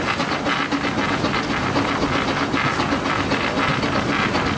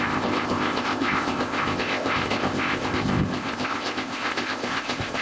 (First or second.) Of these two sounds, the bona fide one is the first